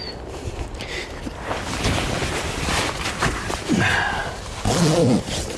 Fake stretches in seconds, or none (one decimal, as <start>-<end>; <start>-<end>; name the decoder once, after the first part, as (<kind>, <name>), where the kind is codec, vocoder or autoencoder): none